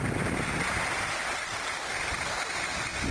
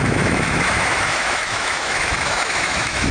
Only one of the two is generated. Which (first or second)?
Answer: second